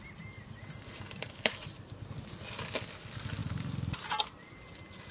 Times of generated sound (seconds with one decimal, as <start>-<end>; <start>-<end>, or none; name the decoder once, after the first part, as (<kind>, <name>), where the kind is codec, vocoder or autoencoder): none